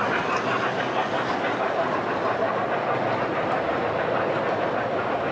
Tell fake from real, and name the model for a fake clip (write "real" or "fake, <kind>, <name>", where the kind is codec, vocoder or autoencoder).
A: real